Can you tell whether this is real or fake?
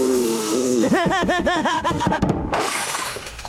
fake